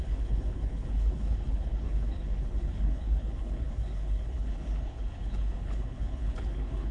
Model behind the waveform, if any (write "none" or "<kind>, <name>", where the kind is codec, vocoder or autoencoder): codec, HILCodec